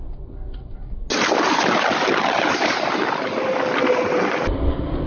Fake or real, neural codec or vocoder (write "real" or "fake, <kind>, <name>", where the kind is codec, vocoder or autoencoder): real